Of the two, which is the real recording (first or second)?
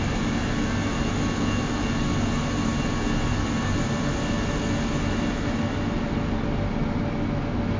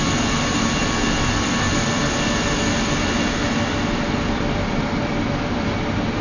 first